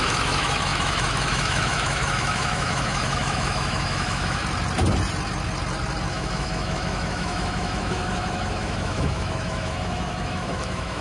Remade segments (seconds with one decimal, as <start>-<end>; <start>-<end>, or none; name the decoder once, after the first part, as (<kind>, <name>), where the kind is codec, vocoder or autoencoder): 0.0-4.4 (autoencoder, DAC-VAE); 6.1-11.0